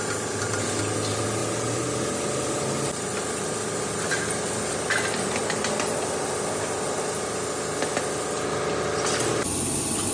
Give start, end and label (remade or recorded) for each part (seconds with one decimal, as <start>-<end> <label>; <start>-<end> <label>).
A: 0.0-10.1 recorded

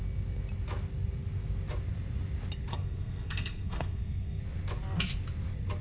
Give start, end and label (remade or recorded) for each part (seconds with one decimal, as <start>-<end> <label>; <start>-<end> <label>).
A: 0.0-2.7 recorded; 2.7-4.4 remade; 4.4-5.8 recorded

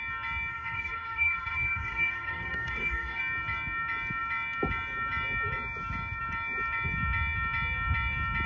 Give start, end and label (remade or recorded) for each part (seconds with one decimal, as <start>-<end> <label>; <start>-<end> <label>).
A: 0.0-0.5 recorded; 0.5-3.2 remade; 3.2-8.5 recorded

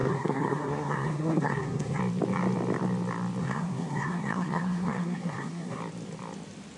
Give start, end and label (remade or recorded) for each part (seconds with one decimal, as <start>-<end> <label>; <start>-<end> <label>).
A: 0.0-2.0 remade; 2.0-3.4 recorded; 3.4-5.8 remade; 5.8-6.8 recorded

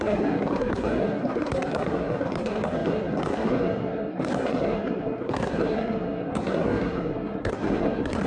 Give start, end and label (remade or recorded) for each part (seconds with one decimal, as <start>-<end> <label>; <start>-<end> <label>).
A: 0.0-8.3 remade

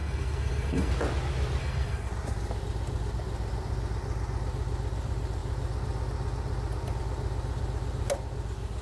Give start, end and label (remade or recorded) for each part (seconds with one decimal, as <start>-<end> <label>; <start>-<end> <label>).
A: 0.0-0.9 remade; 0.9-1.6 recorded; 1.6-2.1 remade; 2.1-8.8 recorded

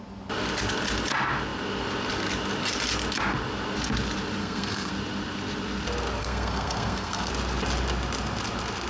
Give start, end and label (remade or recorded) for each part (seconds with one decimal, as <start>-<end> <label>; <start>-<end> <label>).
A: 0.0-4.4 recorded; 4.4-4.9 remade; 4.9-6.2 recorded; 6.2-7.3 remade; 7.3-8.9 recorded

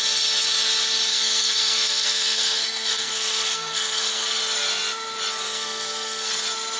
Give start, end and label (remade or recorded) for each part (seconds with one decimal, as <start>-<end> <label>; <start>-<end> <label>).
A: 0.0-1.1 recorded; 1.1-4.4 remade; 4.4-5.4 recorded; 5.4-6.3 remade; 6.3-6.8 recorded